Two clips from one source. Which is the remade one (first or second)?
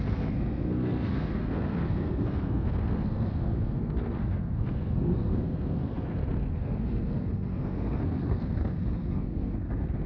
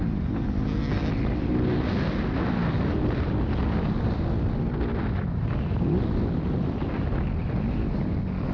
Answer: first